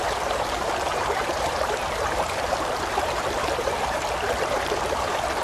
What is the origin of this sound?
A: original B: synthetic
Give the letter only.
B